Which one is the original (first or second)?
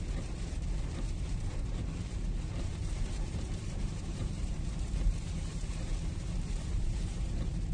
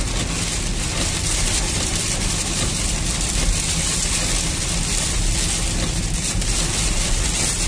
second